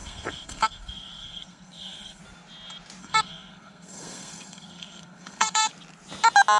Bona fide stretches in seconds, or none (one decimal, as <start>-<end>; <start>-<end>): 2.2-3.0; 5.7-6.6